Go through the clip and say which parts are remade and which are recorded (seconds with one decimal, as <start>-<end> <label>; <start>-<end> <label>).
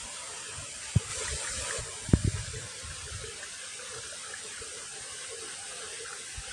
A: 0.0-6.5 recorded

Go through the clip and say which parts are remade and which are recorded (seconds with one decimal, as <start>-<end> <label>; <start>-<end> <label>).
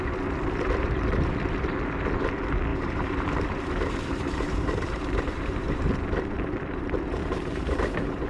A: 0.0-2.7 recorded; 2.7-5.9 remade; 5.9-7.2 recorded; 7.2-8.3 remade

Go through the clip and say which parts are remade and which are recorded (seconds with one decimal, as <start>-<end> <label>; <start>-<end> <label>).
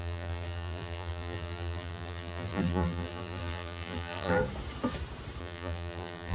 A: 0.0-4.4 remade; 4.4-5.4 recorded; 5.4-6.3 remade